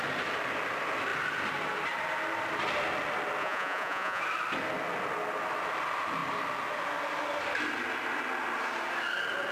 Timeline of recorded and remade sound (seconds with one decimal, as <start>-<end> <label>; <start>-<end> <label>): 0.0-3.4 recorded; 3.4-4.2 remade; 4.2-9.5 recorded